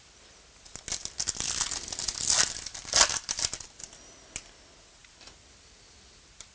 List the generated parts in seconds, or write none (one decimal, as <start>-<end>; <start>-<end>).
none